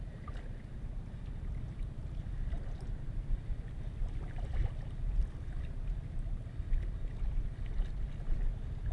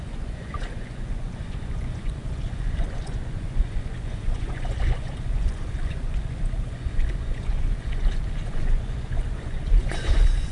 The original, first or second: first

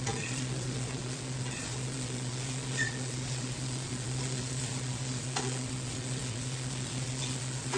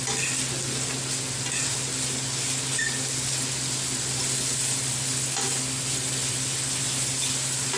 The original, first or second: second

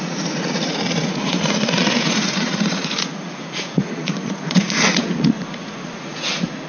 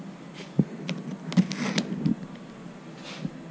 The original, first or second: second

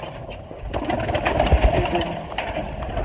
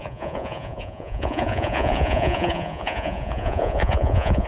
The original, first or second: first